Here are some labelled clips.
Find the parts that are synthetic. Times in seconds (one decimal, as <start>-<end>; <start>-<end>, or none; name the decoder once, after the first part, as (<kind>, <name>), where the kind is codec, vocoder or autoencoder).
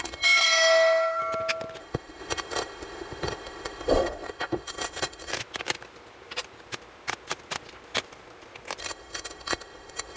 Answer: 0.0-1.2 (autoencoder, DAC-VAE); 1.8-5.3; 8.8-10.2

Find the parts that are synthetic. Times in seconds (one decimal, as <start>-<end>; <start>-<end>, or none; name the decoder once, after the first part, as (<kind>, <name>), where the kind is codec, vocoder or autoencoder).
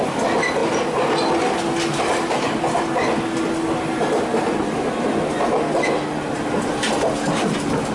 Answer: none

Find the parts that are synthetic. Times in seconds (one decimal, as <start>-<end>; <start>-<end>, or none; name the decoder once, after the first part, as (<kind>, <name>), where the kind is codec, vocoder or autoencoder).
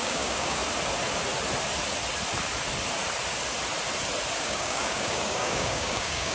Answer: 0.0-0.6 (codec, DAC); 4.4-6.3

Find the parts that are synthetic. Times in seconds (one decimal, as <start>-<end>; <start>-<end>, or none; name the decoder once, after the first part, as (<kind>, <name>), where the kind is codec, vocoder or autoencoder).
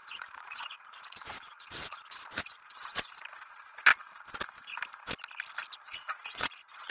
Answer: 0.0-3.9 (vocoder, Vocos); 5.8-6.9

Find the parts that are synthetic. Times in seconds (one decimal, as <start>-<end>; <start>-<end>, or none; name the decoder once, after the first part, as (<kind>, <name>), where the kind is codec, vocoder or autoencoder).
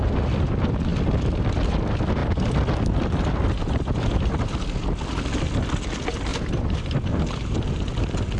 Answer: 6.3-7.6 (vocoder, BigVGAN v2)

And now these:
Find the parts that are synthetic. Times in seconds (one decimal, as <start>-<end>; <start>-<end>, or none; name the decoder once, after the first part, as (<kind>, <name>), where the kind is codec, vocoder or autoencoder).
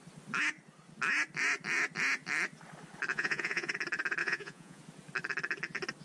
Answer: 3.1-3.7 (vocoder, Vocos); 4.2-4.8